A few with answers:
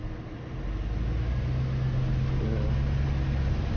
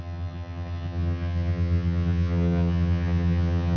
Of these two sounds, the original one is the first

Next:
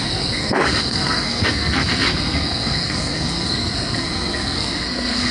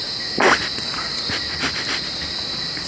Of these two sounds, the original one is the second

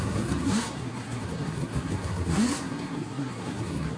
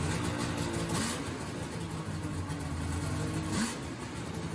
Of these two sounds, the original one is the second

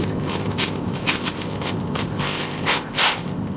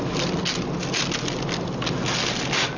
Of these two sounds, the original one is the second